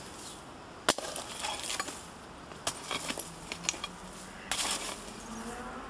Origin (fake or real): real